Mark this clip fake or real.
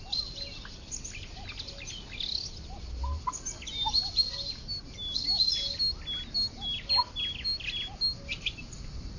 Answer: real